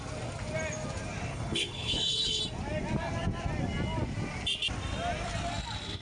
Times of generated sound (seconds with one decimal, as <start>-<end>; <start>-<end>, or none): 1.3-2.4